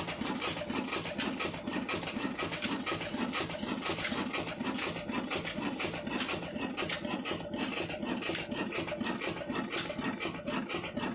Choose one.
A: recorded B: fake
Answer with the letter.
A